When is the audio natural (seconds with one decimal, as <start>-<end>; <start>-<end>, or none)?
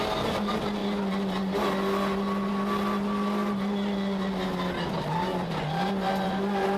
0.0-6.8